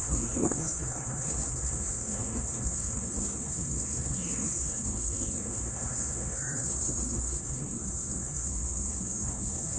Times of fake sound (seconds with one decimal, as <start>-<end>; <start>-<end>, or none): 0.0-9.8